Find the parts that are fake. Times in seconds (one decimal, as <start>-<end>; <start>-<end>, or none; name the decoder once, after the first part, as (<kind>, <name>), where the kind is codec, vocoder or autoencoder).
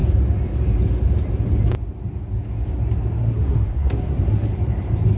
3.2-4.5 (codec, SNAC)